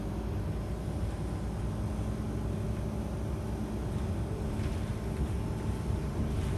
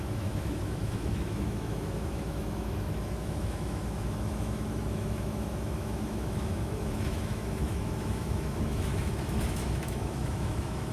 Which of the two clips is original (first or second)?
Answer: first